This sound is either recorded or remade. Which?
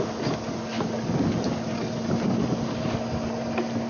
recorded